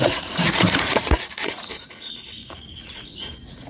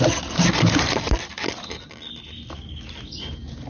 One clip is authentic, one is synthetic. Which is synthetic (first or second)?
first